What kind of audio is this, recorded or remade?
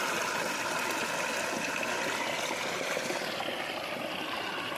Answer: recorded